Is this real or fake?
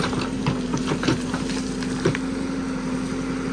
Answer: real